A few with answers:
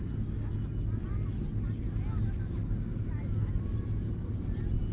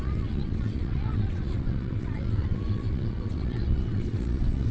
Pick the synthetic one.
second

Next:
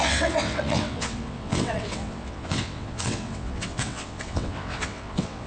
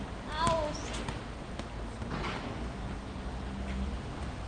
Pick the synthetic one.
first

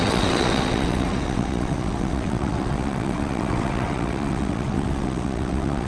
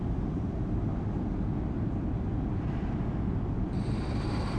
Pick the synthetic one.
first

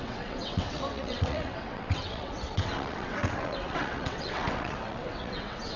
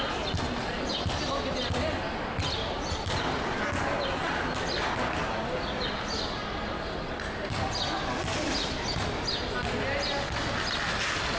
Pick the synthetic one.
first